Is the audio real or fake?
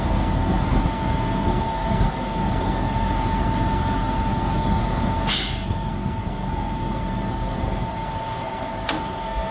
fake